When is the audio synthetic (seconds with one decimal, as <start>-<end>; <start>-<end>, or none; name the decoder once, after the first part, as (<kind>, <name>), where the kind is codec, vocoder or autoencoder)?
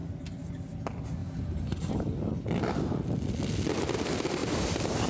1.2-1.9 (vocoder, BigVGAN v2); 4.4-5.1